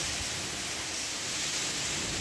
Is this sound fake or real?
real